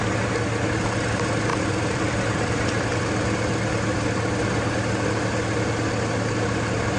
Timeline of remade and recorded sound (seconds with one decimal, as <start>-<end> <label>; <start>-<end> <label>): 0.0-1.5 recorded; 1.5-3.1 remade; 3.1-7.0 recorded